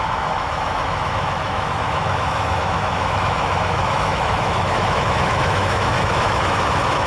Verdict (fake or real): fake